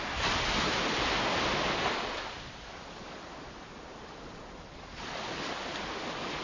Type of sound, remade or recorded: recorded